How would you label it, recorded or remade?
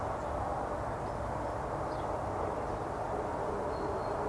recorded